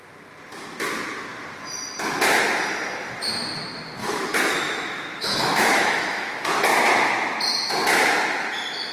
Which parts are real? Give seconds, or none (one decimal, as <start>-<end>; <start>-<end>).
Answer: 0.0-4.0; 6.4-8.9